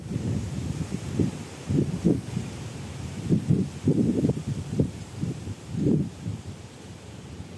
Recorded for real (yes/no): no